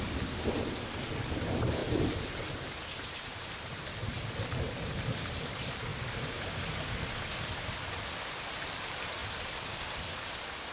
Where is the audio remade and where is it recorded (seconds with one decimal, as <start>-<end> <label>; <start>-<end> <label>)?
0.0-1.8 recorded; 1.8-4.6 remade; 4.6-5.9 recorded; 5.9-6.6 remade; 6.6-10.7 recorded